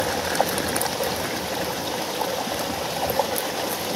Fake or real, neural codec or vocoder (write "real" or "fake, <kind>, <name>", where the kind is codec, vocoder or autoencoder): real